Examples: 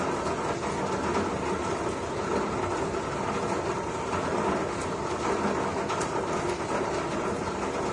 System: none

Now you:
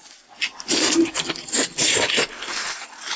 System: none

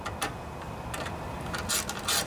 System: vocoder, BigVGAN v2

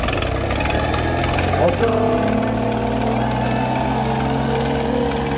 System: none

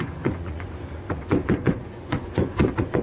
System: vocoder, Vocos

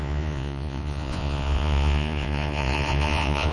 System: vocoder, Vocos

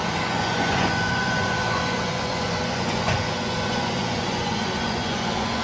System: vocoder, Vocos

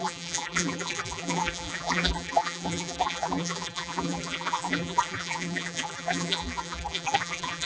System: vocoder, BigVGAN v2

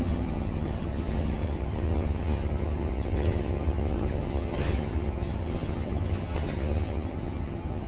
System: vocoder, HiFi-GAN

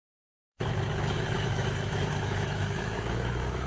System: autoencoder, DAC-VAE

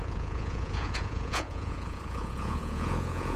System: vocoder, Vocos